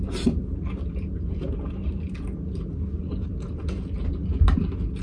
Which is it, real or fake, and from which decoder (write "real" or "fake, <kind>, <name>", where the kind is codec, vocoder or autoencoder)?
real